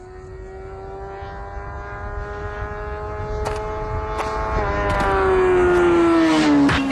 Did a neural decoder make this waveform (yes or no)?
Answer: no